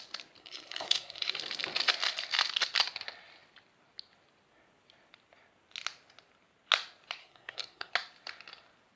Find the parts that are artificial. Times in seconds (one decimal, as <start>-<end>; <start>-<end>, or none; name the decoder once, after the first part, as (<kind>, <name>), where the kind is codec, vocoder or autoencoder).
0.4-1.3 (codec, SNAC); 7.2-7.9